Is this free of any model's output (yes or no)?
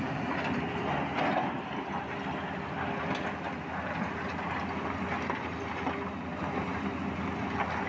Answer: yes